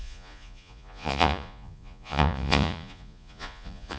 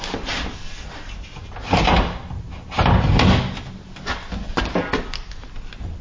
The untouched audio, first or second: second